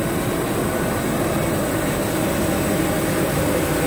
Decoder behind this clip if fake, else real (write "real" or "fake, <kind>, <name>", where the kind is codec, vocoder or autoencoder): real